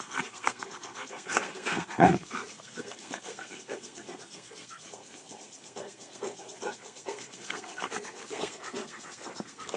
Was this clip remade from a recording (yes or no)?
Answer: yes